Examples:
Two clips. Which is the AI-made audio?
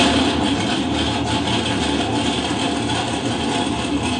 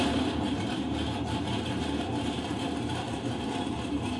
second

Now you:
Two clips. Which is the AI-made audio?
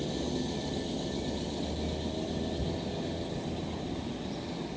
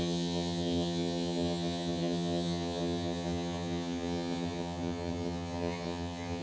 second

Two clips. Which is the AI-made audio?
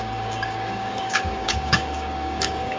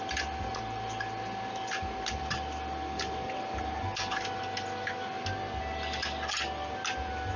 first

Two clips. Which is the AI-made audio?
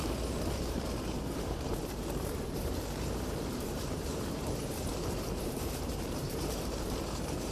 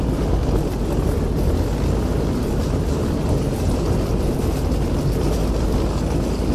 first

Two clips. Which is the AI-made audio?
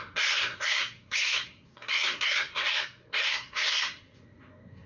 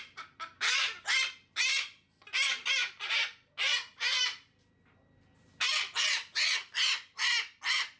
first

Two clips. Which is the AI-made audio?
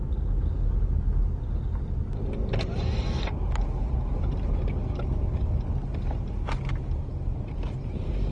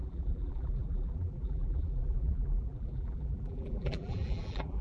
second